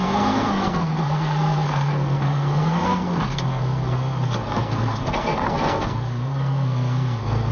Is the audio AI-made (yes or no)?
yes